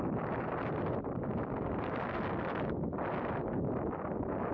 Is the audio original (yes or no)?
yes